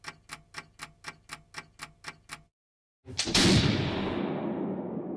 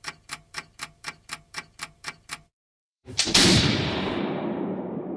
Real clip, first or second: first